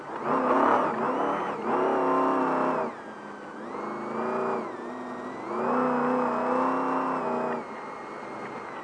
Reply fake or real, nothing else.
real